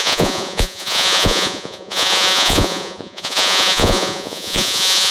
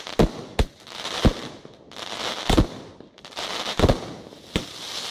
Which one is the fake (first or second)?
first